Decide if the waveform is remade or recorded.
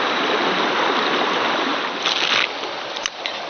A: recorded